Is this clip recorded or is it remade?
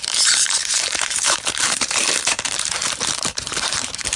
remade